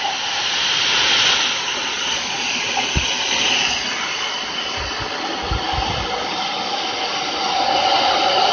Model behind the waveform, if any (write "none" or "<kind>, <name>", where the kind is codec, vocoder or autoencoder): none